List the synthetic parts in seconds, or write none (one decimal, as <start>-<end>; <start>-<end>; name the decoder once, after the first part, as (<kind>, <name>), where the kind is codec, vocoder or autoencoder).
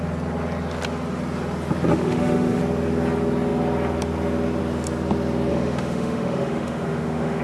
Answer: 1.9-2.6 (autoencoder, DAC-VAE); 5.5-7.4